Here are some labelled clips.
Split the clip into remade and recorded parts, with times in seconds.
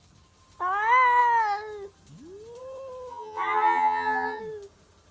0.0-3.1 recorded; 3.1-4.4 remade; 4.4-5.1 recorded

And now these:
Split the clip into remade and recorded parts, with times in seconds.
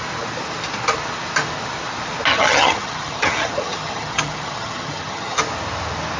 0.0-2.3 recorded; 2.3-5.4 remade; 5.4-6.2 recorded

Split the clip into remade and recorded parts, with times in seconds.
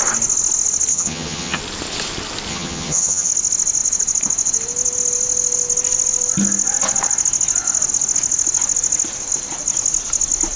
0.0-0.9 recorded; 0.9-1.6 remade; 1.6-2.5 recorded; 2.5-3.3 remade; 3.3-10.6 recorded